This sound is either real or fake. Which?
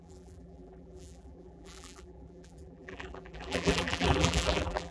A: fake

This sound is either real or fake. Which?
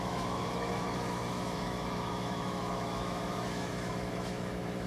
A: fake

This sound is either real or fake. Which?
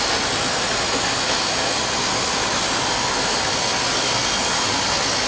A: real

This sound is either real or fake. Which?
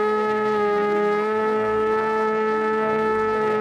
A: fake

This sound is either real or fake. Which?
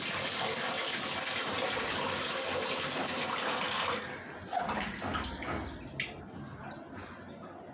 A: real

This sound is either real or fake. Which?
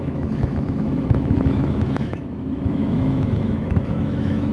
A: fake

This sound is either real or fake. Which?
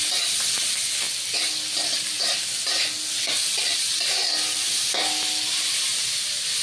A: real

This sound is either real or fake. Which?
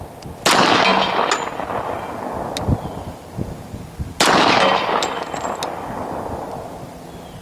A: real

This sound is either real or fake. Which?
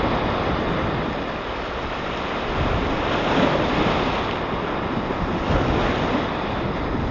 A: real